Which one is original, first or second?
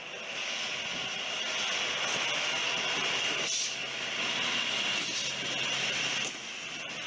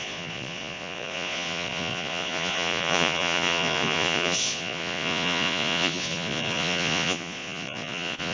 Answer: first